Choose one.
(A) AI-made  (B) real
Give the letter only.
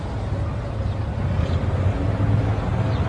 B